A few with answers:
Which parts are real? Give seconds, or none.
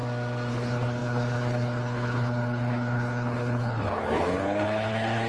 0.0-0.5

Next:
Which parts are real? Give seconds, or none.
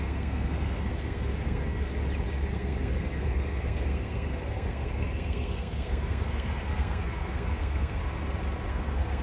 1.9-2.5; 8.0-8.7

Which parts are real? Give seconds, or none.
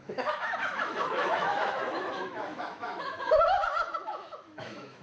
none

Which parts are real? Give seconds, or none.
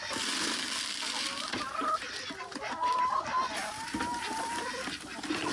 0.0-5.5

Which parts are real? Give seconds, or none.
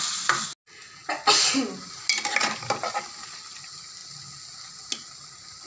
0.0-5.7